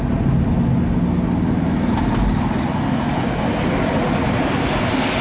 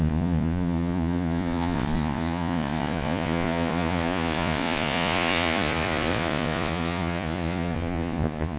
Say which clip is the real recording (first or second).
first